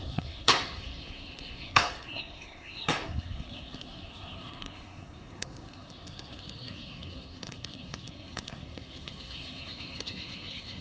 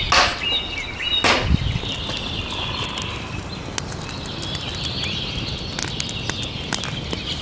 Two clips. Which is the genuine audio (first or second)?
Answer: second